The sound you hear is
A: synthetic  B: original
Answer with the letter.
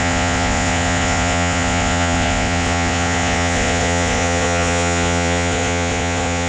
A